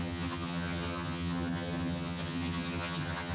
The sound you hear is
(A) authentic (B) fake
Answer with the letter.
B